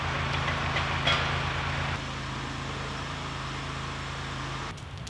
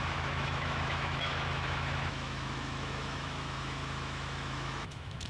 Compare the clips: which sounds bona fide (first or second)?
first